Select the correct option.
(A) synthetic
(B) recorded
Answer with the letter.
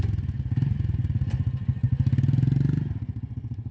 B